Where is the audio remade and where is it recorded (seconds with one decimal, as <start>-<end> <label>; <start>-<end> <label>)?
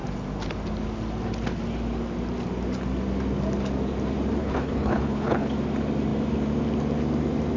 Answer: 0.0-4.4 recorded; 4.4-5.5 remade; 5.5-7.6 recorded